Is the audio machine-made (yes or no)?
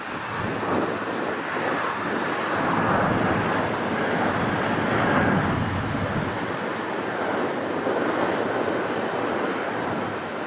no